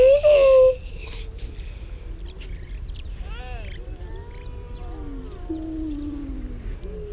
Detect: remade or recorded recorded